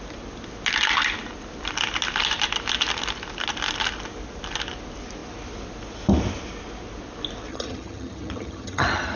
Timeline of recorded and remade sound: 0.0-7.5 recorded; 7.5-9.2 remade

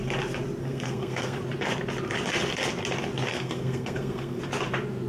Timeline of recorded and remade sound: 0.0-0.6 recorded; 0.6-1.4 remade; 1.4-3.3 recorded; 3.3-4.4 remade; 4.4-5.1 recorded